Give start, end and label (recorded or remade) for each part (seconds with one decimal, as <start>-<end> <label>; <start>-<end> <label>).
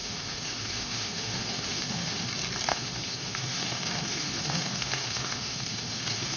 0.0-2.3 remade; 2.3-2.7 recorded; 2.7-6.4 remade